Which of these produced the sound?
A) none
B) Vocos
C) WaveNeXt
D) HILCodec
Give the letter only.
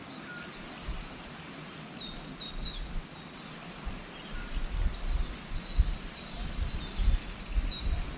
A